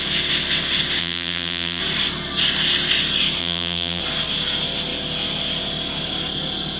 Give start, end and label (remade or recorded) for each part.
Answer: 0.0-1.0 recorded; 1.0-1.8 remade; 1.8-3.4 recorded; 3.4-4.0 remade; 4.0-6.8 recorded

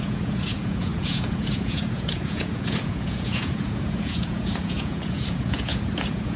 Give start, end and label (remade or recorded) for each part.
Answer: 0.0-6.4 remade

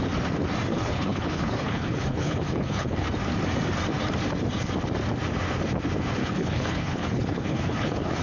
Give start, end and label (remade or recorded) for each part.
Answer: 0.0-0.7 recorded; 0.7-3.1 remade; 3.1-6.2 recorded; 6.2-8.2 remade

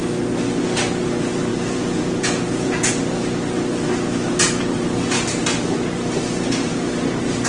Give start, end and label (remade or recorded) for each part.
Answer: 0.0-1.5 recorded; 1.5-2.9 remade; 2.9-7.5 recorded